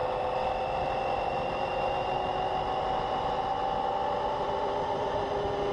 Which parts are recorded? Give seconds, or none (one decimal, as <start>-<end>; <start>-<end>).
0.0-5.7